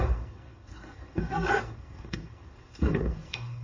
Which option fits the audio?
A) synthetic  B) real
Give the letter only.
A